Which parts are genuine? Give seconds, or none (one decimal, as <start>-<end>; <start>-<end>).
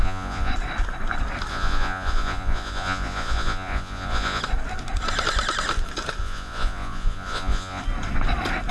0.5-1.5; 4.4-6.2; 7.8-8.7